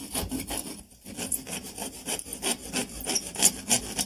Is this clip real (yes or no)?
yes